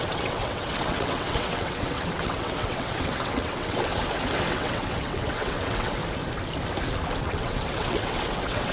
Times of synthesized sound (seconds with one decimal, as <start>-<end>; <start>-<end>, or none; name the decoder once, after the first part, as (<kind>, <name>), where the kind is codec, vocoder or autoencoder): 0.0-3.9 (vocoder, WaveNeXt); 4.5-6.0; 7.2-8.7